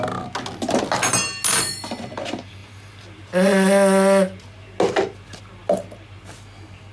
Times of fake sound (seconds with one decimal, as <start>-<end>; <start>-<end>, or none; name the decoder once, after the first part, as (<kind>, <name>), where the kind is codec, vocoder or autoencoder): none